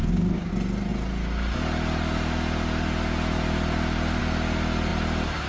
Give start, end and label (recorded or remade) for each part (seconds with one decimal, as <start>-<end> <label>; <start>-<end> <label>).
0.0-0.5 remade; 0.5-5.5 recorded